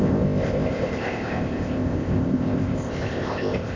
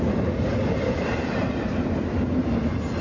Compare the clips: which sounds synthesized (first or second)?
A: first